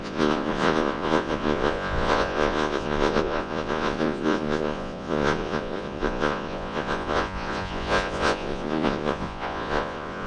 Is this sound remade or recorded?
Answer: remade